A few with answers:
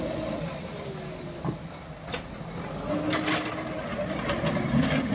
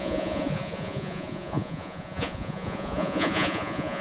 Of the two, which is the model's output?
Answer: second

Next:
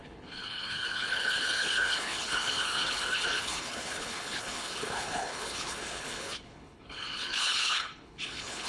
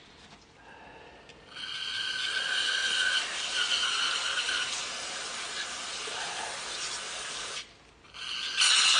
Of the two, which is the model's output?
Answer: first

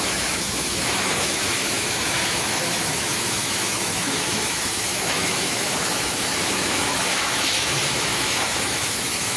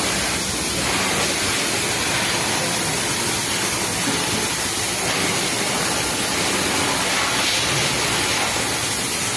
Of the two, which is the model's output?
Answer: first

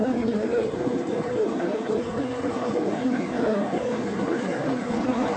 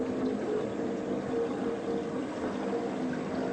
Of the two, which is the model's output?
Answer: first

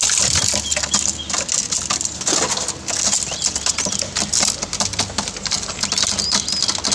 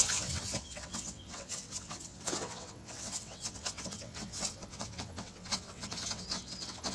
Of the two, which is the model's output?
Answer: second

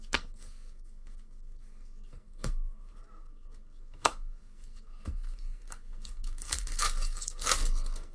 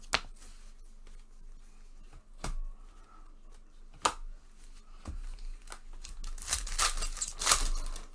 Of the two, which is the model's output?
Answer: first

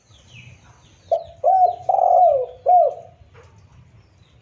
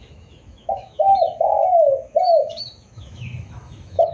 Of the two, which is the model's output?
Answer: second